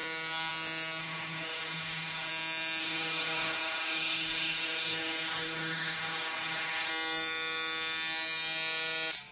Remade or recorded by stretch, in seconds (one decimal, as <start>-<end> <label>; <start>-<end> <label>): 0.0-1.0 recorded; 1.0-2.3 remade; 2.3-2.8 recorded; 2.8-6.9 remade; 6.9-9.3 recorded